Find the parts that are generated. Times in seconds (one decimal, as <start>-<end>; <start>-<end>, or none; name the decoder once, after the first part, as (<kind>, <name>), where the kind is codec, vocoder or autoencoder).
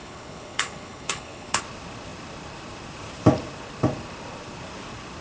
0.0-1.6 (codec, HILCodec)